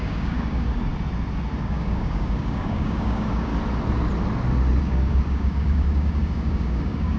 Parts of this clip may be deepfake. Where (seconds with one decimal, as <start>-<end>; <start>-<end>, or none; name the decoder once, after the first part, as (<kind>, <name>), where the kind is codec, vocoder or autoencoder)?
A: 0.0-0.9 (codec, DAC); 1.6-3.5; 4.8-7.2